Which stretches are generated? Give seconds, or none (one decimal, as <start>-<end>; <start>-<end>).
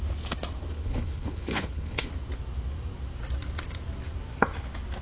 0.7-2.1